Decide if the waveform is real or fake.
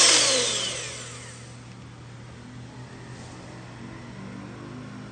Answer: real